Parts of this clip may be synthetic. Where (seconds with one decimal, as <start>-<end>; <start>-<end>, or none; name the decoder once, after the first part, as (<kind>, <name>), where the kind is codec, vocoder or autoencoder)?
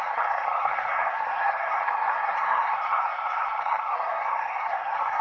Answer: 0.0-5.2 (codec, SNAC)